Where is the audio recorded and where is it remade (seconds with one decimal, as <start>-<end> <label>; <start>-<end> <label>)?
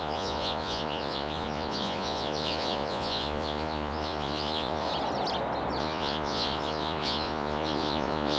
0.0-4.9 remade; 4.9-5.8 recorded; 5.8-8.4 remade